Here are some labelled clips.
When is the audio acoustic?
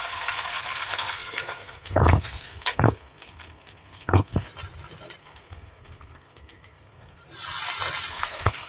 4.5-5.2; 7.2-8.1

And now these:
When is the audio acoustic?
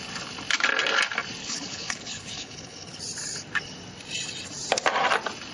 0.0-1.4; 3.0-5.5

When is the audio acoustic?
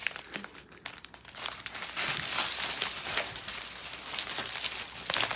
0.0-5.4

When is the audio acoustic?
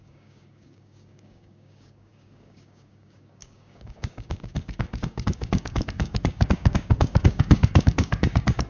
none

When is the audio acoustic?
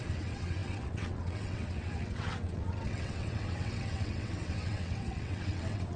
none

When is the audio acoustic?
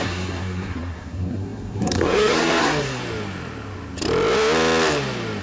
3.0-5.4